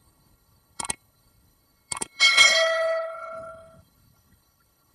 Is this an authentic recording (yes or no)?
no